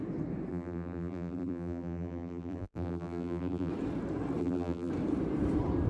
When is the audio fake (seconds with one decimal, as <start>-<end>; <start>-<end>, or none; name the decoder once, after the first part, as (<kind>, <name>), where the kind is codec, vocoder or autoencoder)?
0.5-3.7 (vocoder, BigVGAN v2); 4.4-4.9